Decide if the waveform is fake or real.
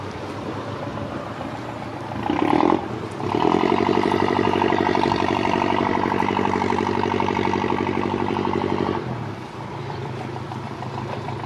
fake